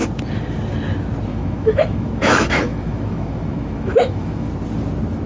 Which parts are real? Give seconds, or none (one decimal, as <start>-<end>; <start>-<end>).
0.0-1.3; 4.5-5.3